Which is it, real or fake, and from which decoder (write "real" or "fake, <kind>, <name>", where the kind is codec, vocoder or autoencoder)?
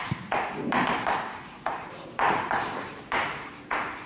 fake, vocoder, BigVGAN v2